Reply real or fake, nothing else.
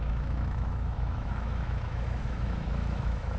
fake